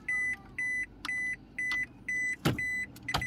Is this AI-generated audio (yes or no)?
no